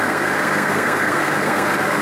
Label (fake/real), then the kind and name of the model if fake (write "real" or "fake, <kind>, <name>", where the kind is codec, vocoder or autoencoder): fake, codec, SNAC